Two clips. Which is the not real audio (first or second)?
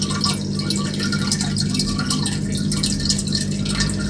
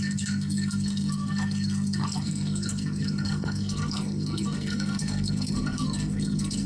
second